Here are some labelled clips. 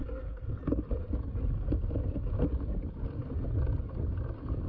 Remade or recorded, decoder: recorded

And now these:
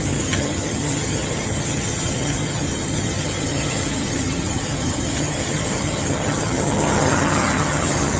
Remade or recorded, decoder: remade, vocoder, HiFi-GAN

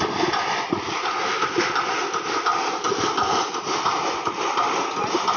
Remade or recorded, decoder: recorded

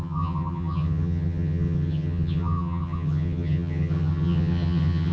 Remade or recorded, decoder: remade, vocoder, HiFi-GAN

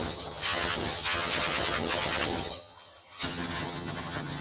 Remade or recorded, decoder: remade, vocoder, HiFi-GAN